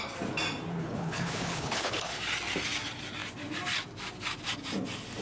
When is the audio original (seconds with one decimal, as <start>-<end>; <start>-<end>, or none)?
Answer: 0.0-0.7; 2.2-5.2